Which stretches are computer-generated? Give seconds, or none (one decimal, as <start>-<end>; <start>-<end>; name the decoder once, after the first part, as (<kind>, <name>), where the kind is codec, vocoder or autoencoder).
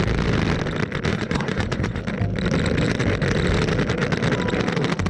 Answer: 1.1-2.0 (vocoder, Vocos)